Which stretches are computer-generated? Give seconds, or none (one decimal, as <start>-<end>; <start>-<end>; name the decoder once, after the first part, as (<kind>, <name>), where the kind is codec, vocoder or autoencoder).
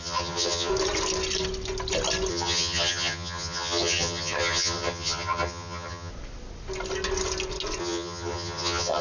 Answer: 0.0-0.7 (vocoder, HiFi-GAN); 2.3-6.1; 7.8-9.0